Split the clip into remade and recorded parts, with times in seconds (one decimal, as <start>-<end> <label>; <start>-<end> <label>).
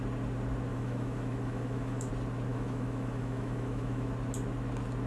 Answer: 0.0-0.7 recorded; 0.7-2.1 remade; 2.1-2.5 recorded; 2.5-4.1 remade; 4.1-5.1 recorded